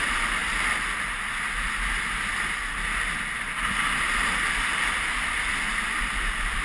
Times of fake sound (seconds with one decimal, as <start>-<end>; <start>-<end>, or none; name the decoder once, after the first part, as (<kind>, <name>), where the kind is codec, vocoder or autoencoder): 0.0-0.4 (vocoder, BigVGAN v2); 4.4-6.6